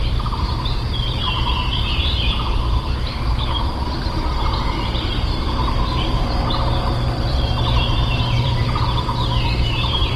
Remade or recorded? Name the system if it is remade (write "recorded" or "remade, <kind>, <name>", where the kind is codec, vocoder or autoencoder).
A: remade, vocoder, BigVGAN v2